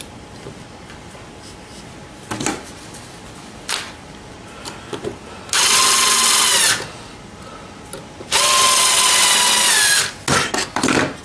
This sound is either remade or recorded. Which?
recorded